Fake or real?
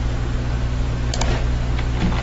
real